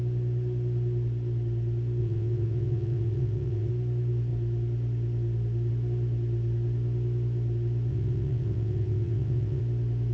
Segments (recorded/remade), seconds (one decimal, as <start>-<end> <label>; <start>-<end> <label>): 0.0-2.0 recorded; 2.0-3.7 remade; 3.7-7.9 recorded; 7.9-9.6 remade; 9.6-10.1 recorded